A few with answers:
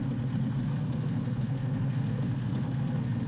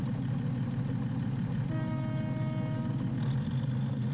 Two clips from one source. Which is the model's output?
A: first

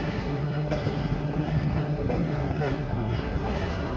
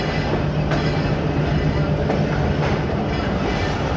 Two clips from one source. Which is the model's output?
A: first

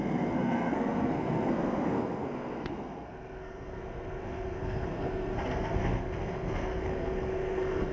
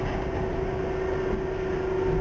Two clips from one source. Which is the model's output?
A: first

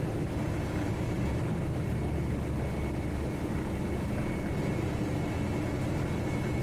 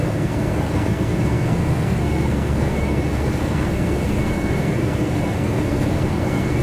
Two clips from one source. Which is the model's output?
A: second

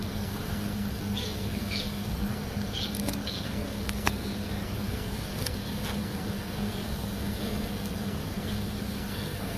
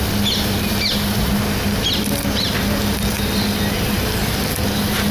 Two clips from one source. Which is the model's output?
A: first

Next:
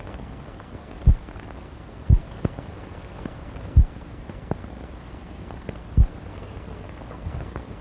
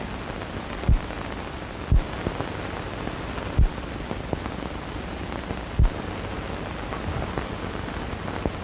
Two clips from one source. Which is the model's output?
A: first